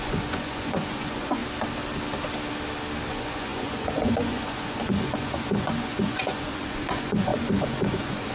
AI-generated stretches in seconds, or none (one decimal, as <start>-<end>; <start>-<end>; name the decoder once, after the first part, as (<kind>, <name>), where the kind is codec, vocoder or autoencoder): 0.0-1.4 (vocoder, Vocos); 3.1-8.3